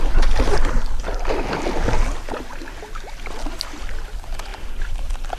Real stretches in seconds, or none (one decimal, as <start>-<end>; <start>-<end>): 0.0-5.4